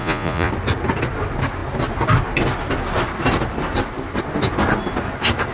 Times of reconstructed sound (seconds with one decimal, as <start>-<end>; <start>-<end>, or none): 0.0-0.5